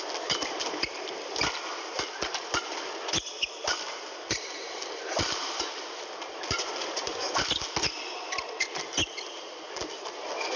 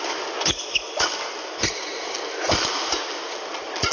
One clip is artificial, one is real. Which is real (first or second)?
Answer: second